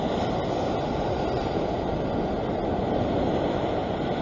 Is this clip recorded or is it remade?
recorded